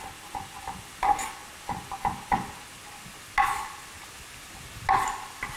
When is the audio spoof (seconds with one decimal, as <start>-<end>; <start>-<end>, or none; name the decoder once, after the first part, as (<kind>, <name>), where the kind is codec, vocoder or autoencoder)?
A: none